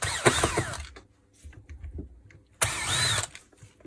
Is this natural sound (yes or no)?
yes